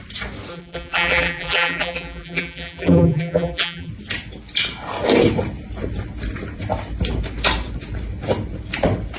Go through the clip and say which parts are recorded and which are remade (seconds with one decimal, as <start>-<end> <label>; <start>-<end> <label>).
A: 0.0-0.5 recorded; 0.5-3.9 remade; 3.9-9.2 recorded